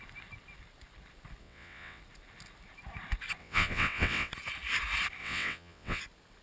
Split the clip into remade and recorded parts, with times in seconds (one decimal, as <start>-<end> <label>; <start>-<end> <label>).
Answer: 0.0-1.4 recorded; 1.4-2.0 remade; 2.0-3.4 recorded; 3.4-4.3 remade; 4.3-5.2 recorded; 5.2-6.0 remade; 6.0-6.4 recorded